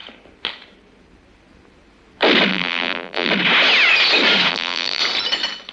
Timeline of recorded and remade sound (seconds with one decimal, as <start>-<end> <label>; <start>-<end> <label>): 0.0-2.5 recorded; 2.5-3.3 remade; 3.3-4.5 recorded; 4.5-5.0 remade; 5.0-5.7 recorded